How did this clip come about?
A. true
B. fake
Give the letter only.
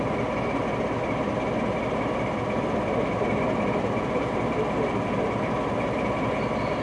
A